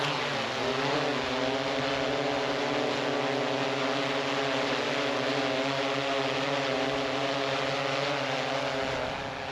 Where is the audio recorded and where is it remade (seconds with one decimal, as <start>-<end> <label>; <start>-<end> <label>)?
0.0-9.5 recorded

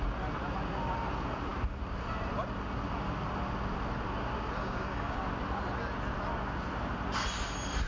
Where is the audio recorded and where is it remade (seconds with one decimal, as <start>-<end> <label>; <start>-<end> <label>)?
0.0-4.6 recorded; 4.6-5.2 remade; 5.2-7.9 recorded

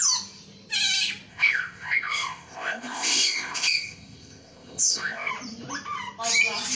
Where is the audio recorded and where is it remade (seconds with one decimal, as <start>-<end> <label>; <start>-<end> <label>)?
0.0-1.3 recorded; 1.3-5.3 remade; 5.3-6.7 recorded

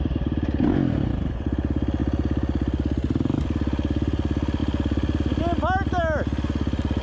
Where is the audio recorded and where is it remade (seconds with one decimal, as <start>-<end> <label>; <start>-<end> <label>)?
0.0-7.0 recorded

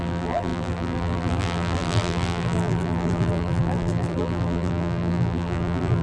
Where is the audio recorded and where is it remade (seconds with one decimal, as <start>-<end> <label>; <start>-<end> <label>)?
0.0-6.0 remade

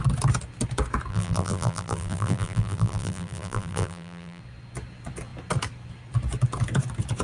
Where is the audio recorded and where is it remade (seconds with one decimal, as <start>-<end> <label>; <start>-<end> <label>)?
0.0-1.1 recorded; 1.1-4.4 remade; 4.4-7.2 recorded